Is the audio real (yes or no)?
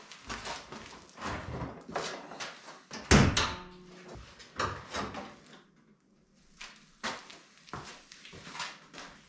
yes